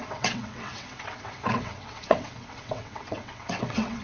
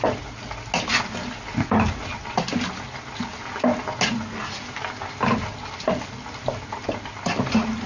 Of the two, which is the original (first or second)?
second